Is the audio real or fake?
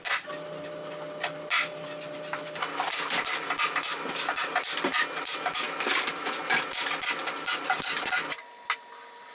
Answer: real